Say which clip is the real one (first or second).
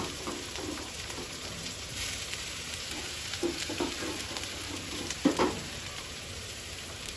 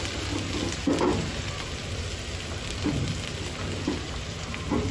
second